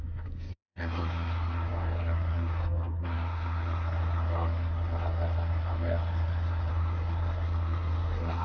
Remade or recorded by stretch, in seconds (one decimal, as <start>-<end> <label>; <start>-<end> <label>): 0.0-8.4 remade